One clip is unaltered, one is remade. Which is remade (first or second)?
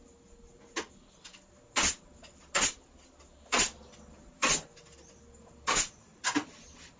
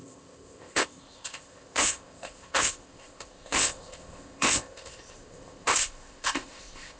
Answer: second